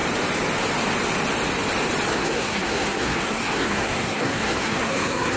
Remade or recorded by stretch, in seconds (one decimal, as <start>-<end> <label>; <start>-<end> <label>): 0.0-2.1 recorded; 2.1-5.4 remade